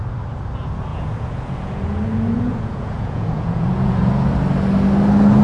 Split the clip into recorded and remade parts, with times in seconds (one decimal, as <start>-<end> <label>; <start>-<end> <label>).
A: 0.0-0.9 recorded; 0.9-4.1 remade; 4.1-5.4 recorded